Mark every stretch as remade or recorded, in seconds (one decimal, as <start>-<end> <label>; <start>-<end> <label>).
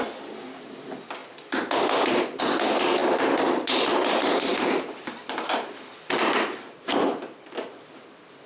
0.0-3.0 recorded; 3.0-5.1 remade; 5.1-8.5 recorded